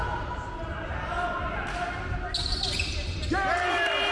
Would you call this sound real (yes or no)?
yes